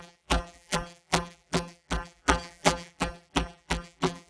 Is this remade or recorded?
remade